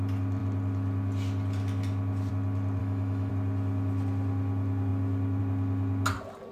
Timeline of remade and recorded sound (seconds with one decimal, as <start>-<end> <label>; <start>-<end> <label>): 0.0-2.8 recorded; 2.8-3.3 remade; 3.3-6.5 recorded